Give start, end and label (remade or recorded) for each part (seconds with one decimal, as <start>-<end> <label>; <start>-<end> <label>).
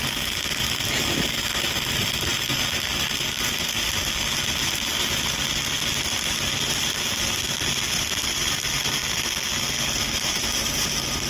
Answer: 0.0-11.3 recorded